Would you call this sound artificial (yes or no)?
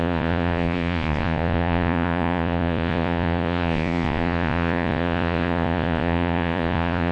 yes